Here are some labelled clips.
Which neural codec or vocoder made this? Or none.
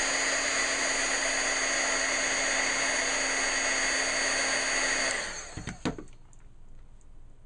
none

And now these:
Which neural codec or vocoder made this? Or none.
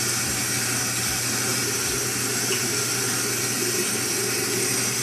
none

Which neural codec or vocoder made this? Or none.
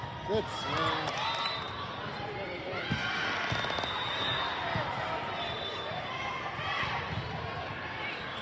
none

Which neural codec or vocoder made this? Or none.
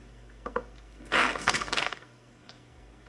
codec, SNAC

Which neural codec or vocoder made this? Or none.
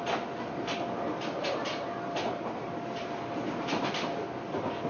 none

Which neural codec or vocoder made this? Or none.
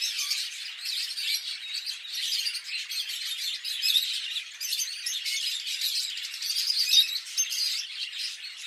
none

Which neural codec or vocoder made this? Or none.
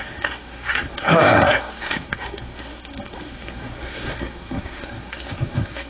codec, SNAC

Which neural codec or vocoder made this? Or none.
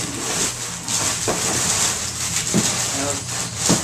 none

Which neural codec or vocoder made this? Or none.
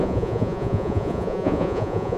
vocoder, Vocos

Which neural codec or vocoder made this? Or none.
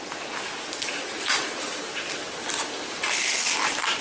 none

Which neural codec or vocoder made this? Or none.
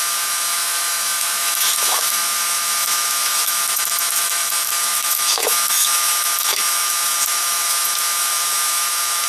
autoencoder, DAC-VAE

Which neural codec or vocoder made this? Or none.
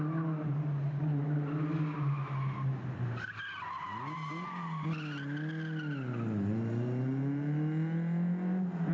none